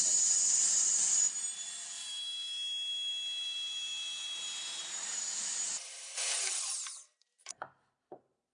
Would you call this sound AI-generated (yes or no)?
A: yes